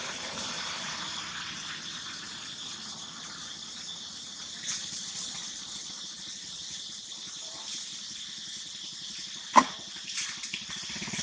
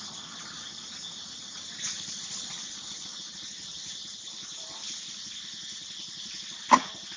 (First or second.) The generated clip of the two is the first